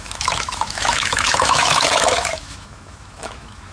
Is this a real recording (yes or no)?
no